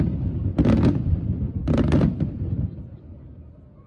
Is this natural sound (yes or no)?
yes